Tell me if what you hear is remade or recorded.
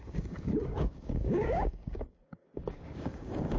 remade